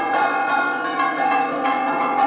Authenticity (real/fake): fake